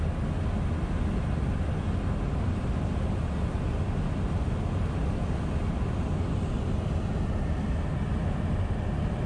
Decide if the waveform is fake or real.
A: real